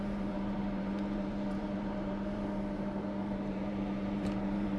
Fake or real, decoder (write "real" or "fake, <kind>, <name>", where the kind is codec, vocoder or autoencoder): fake, vocoder, BigVGAN v2